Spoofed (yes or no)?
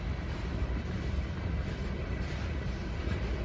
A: no